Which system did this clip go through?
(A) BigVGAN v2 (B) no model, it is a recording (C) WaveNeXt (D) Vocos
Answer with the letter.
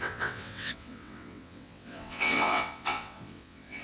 C